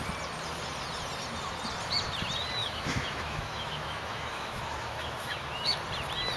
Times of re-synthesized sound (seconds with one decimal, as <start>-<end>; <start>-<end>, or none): 2.6-5.8

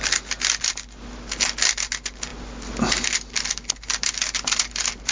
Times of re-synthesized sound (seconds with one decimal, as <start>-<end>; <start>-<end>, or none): none